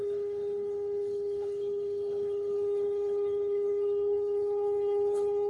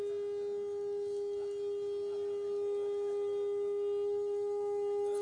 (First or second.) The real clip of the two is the second